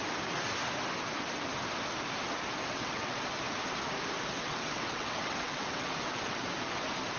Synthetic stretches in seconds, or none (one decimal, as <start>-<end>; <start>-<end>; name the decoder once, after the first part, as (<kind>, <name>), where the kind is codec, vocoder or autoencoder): 2.6-3.2 (vocoder, WaveNeXt); 4.3-5.9